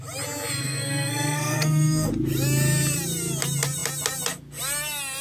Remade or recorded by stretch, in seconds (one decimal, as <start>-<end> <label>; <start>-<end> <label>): 0.0-0.6 recorded; 0.6-2.1 remade; 2.1-5.2 recorded